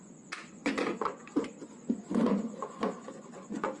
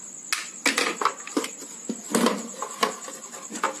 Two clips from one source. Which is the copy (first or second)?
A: first